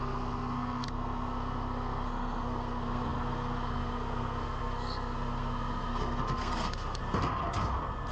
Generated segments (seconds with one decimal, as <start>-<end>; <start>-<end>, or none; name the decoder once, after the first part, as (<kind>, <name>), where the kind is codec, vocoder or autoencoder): 0.0-7.0 (codec, SNAC)